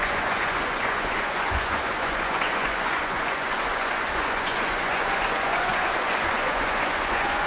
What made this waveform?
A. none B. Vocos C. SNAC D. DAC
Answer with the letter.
B